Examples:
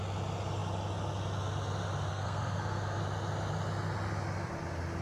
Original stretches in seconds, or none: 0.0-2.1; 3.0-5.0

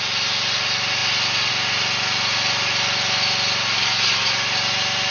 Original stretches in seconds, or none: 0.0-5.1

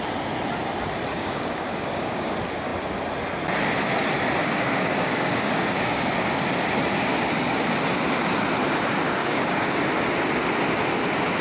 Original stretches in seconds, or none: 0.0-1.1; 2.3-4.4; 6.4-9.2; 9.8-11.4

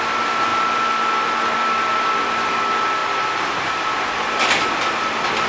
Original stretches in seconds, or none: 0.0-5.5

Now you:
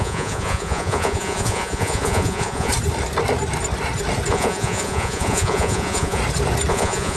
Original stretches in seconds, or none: 2.7-4.3; 6.2-6.7

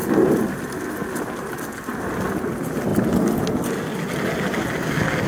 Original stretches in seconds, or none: 0.0-5.3